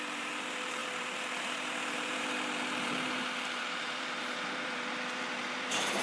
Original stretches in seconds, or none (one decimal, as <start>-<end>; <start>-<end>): none